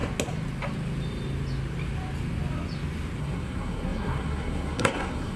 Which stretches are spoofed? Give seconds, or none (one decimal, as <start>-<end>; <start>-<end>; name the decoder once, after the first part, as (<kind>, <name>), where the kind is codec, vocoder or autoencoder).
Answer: 3.2-5.4 (codec, SNAC)